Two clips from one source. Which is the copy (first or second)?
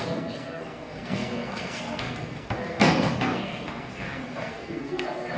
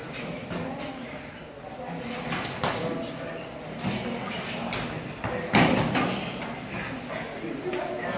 first